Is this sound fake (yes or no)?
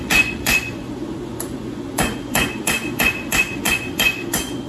yes